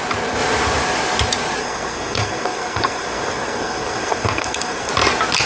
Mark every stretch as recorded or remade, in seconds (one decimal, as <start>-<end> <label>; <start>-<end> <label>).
0.0-1.6 recorded; 1.6-4.9 remade; 4.9-5.5 recorded

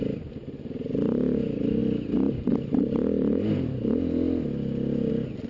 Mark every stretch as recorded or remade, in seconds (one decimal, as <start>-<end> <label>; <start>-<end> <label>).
0.0-5.5 recorded

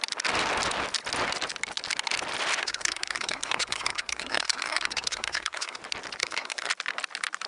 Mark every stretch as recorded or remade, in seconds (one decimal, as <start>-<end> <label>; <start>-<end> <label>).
0.0-2.6 recorded; 2.6-5.8 remade; 5.8-6.2 recorded; 6.2-6.7 remade; 6.7-7.5 recorded

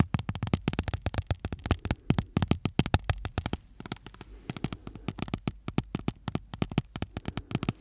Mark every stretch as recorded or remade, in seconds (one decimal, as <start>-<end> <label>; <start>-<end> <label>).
0.0-7.8 recorded

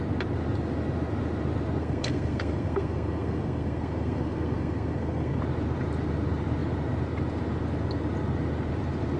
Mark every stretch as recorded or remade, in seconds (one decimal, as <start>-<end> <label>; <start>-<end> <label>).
0.0-1.8 recorded; 1.8-5.4 remade; 5.4-9.2 recorded

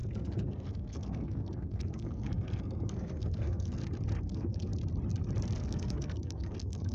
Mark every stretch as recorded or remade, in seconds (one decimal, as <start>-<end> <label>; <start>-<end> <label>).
0.0-3.8 remade; 3.8-4.3 recorded; 4.3-4.7 remade; 4.7-5.6 recorded; 5.6-6.9 remade

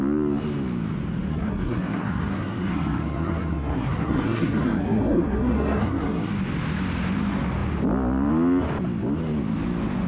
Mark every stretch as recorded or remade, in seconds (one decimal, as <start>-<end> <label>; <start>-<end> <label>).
0.0-1.3 recorded; 1.3-6.3 remade; 6.3-10.1 recorded

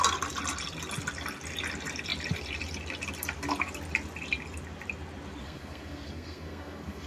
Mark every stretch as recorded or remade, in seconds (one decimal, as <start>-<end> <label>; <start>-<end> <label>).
0.0-5.4 recorded; 5.4-7.1 remade